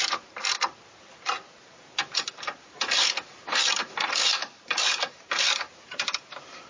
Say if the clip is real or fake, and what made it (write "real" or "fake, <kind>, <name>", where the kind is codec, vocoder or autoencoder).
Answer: fake, vocoder, BigVGAN v2